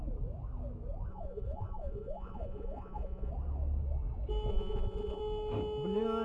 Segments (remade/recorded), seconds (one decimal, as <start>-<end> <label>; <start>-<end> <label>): 0.0-1.1 recorded; 1.1-3.3 remade; 3.3-4.5 recorded; 4.5-5.2 remade; 5.2-6.2 recorded